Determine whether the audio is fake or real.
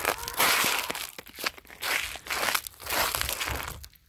real